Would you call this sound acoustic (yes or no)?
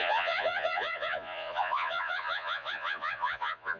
no